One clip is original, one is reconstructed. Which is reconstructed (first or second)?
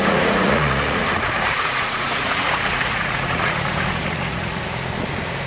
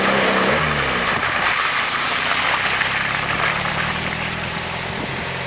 first